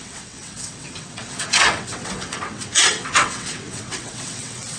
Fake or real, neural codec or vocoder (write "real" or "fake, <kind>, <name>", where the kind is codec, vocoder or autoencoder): fake, vocoder, WaveNeXt